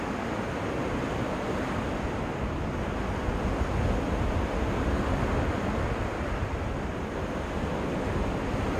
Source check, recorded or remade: recorded